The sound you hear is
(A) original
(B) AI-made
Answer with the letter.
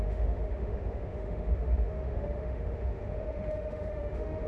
B